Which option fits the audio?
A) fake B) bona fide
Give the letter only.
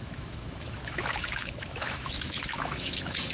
A